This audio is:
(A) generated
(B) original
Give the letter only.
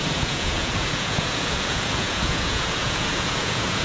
A